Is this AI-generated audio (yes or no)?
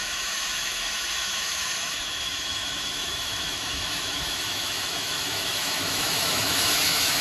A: yes